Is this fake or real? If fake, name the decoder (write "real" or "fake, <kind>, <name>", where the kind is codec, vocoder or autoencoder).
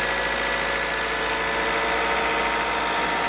real